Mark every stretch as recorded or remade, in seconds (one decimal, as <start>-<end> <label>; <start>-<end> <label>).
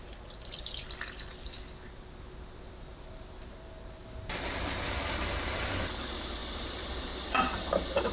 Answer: 0.0-4.9 recorded; 4.9-8.1 remade